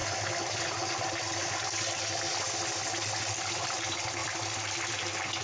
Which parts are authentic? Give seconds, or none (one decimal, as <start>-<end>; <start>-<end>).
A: 1.7-4.2; 4.8-5.4